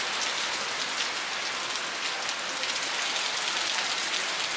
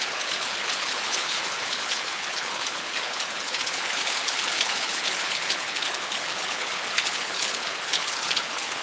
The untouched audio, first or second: first